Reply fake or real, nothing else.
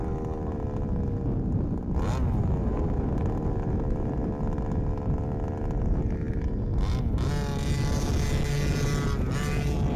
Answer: real